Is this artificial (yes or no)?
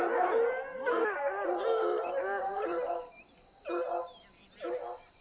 no